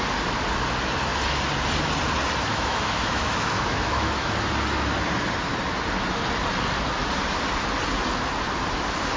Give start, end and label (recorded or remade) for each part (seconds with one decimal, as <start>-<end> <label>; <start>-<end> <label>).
0.0-2.5 recorded; 2.5-4.3 remade; 4.3-9.2 recorded